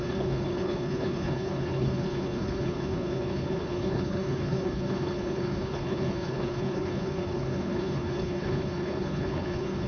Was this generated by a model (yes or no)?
yes